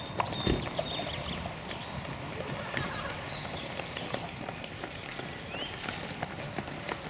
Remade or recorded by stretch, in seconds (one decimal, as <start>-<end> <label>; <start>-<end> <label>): 0.0-7.1 recorded